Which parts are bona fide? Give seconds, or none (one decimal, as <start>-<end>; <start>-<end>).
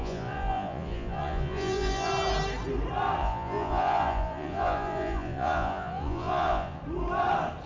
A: 2.1-3.2; 6.8-7.7